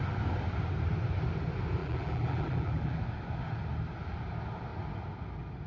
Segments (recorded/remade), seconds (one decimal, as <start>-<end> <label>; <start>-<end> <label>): 0.0-1.8 recorded; 1.8-3.0 remade; 3.0-5.7 recorded